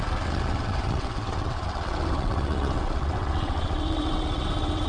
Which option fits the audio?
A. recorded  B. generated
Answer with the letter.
B